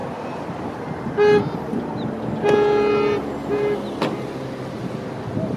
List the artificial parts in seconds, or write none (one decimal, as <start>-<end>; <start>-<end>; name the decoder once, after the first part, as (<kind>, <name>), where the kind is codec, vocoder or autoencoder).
none